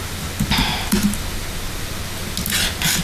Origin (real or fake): real